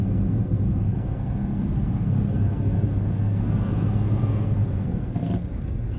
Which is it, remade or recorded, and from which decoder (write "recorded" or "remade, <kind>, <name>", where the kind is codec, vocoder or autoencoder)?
remade, codec, SNAC